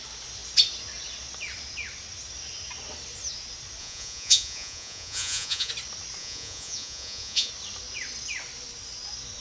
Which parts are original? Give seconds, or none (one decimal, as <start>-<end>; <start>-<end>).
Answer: 0.0-3.8; 5.7-6.2; 7.5-9.4